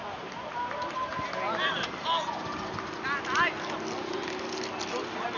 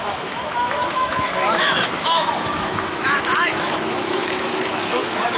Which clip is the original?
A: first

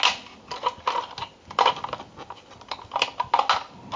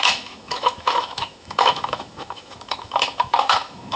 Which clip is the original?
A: first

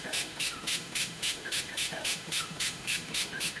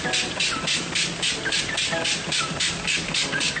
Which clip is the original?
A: second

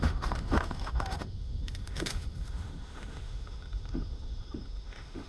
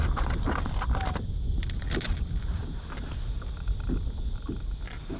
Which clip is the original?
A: second